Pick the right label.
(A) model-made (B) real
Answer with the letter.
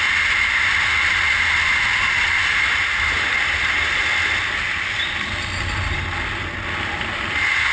B